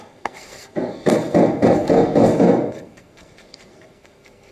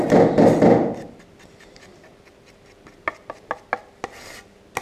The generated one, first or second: first